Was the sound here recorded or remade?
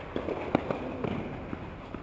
recorded